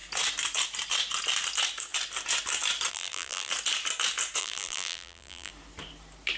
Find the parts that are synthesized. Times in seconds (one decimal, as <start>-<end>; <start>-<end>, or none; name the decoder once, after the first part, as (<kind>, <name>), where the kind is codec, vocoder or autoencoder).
2.9-3.5 (vocoder, BigVGAN v2); 4.4-5.5